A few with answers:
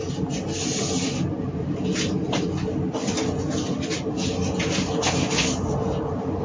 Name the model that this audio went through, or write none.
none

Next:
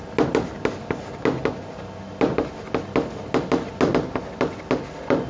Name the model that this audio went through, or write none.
none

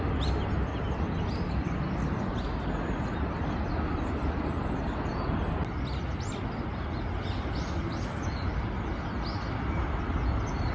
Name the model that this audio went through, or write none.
none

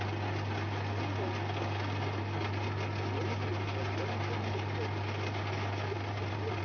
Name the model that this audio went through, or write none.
none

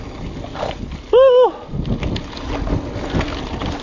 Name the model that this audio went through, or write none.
none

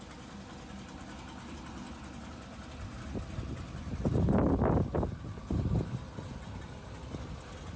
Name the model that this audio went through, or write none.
none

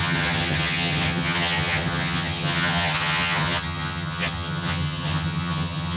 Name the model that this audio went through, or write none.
vocoder, HiFi-GAN